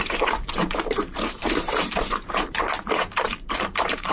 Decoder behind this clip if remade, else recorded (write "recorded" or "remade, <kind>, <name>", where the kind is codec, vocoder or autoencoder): remade, vocoder, BigVGAN v2